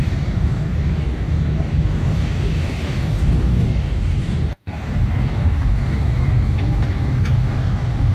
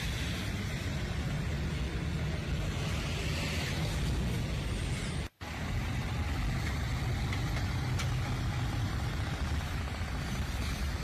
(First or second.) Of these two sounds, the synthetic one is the first